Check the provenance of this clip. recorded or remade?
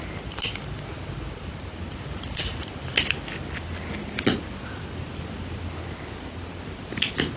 recorded